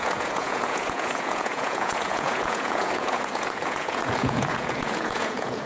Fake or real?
fake